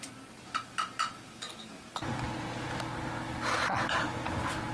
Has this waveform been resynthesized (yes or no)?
no